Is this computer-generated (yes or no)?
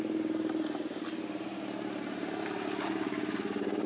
no